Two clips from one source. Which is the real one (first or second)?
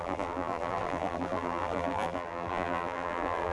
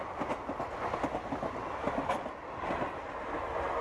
second